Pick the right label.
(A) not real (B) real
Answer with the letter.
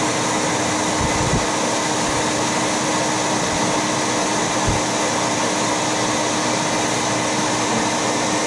B